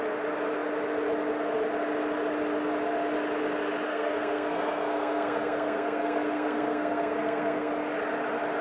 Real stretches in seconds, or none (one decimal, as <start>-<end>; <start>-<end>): 0.0-3.9; 7.7-8.6

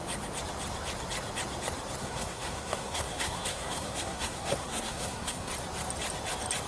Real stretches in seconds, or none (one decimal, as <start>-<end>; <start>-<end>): 0.0-2.0; 5.5-6.7

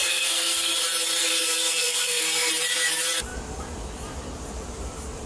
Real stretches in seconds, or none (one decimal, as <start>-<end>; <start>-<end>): 0.7-1.2; 2.5-5.3